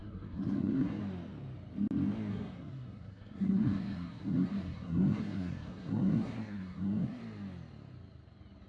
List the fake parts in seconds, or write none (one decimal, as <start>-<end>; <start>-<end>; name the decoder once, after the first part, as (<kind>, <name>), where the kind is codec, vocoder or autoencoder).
0.0-1.0 (codec, SNAC); 2.3-7.2